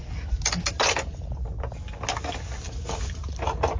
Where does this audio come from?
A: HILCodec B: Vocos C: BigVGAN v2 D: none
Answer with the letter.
D